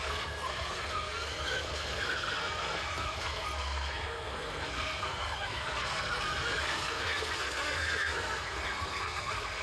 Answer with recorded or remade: remade